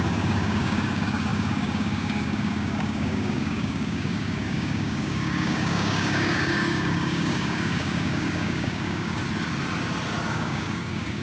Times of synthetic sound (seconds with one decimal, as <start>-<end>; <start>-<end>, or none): 0.0-9.2; 10.3-11.2